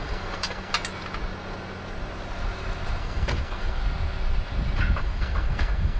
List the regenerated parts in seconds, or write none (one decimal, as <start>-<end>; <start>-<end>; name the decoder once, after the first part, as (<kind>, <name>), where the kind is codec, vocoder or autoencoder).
0.0-0.7 (codec, SNAC); 3.0-3.8; 5.0-6.0